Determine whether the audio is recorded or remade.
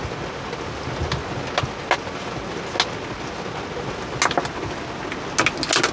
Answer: recorded